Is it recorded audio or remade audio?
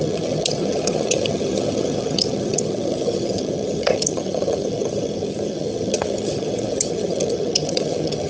remade